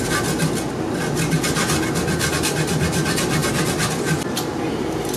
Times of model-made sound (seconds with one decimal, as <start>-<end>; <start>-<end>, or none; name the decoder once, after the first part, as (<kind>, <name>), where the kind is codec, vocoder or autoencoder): none